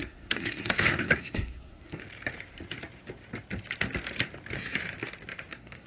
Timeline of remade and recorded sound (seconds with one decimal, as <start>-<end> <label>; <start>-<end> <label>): 0.0-2.0 remade; 2.0-5.5 recorded; 5.5-5.9 remade